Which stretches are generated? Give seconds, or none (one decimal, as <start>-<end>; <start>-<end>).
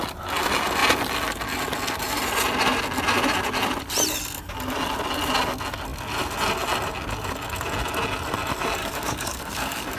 8.8-10.0